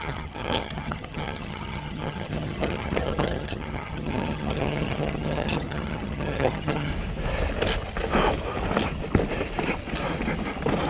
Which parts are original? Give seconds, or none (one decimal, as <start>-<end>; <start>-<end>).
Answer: 6.9-10.9